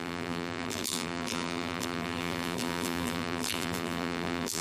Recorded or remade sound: remade